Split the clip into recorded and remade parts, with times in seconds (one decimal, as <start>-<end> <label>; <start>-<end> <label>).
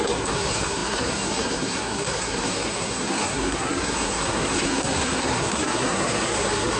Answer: 0.0-6.8 remade